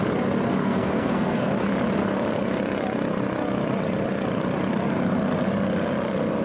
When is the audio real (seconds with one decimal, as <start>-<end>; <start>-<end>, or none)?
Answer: 0.0-0.6; 1.5-6.4